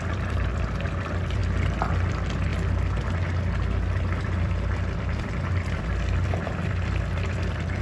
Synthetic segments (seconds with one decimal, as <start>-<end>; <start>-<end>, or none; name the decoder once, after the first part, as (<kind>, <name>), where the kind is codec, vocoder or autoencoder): 0.0-1.4 (vocoder, BigVGAN v2); 2.1-2.5; 4.2-7.8